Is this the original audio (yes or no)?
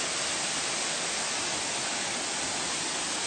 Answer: yes